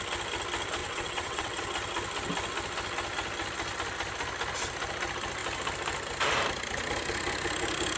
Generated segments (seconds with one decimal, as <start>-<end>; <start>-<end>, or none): 0.8-1.6